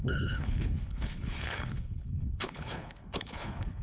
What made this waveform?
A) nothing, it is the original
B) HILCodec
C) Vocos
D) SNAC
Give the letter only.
B